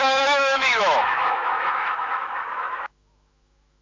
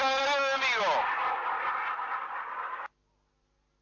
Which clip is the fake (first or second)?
first